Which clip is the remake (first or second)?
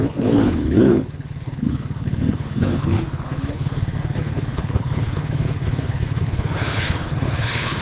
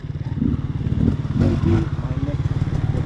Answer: first